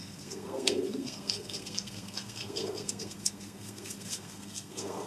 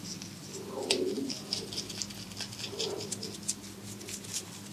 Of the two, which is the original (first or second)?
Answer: second